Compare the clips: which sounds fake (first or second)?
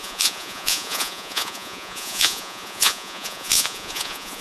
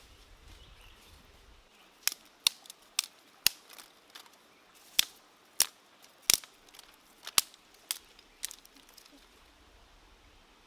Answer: first